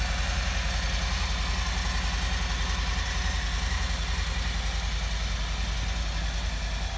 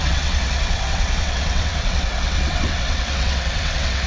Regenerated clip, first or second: second